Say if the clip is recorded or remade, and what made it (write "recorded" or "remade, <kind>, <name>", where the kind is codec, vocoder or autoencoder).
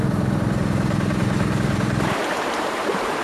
remade, vocoder, BigVGAN v2